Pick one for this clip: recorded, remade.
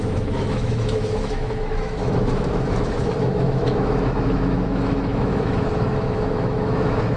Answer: remade